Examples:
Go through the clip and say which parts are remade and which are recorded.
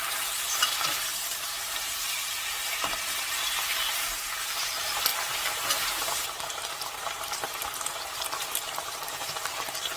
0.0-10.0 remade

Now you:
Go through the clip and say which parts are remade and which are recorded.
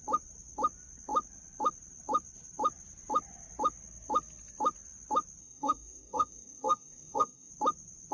0.0-5.4 recorded; 5.4-7.5 remade; 7.5-8.1 recorded